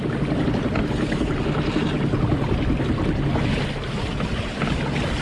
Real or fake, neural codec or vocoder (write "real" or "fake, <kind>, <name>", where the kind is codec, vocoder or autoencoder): real